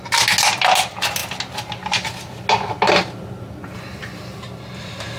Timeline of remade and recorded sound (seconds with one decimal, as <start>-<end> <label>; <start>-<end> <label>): 0.0-5.2 recorded